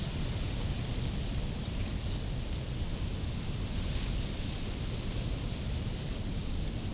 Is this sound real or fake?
real